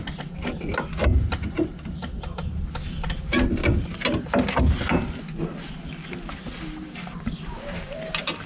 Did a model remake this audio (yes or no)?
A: no